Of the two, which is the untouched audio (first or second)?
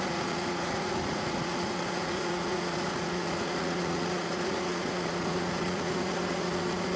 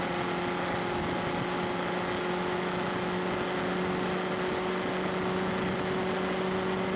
second